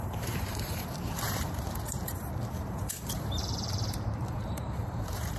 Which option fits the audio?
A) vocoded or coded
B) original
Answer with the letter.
A